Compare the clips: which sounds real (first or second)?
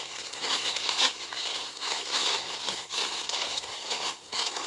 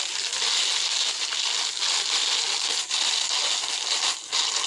second